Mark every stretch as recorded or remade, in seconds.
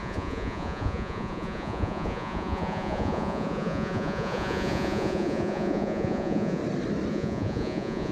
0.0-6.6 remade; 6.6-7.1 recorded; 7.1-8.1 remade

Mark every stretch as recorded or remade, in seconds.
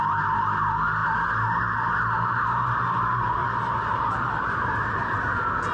0.0-3.4 recorded; 3.4-4.3 remade; 4.3-5.7 recorded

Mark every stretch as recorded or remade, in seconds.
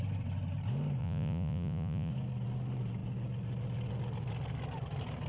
0.0-1.0 recorded; 1.0-2.1 remade; 2.1-5.3 recorded